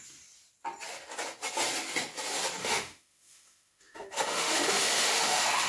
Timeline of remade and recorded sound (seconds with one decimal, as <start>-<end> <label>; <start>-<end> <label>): 0.0-2.6 recorded; 2.6-5.7 remade